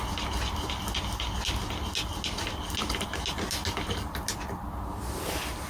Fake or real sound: real